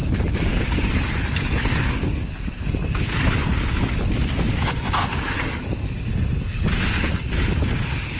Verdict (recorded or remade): recorded